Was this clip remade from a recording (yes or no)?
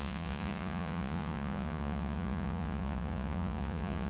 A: yes